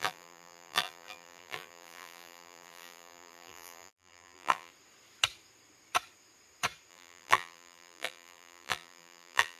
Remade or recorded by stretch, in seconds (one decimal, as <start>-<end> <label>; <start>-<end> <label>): 0.0-4.7 remade; 4.7-6.9 recorded; 6.9-9.6 remade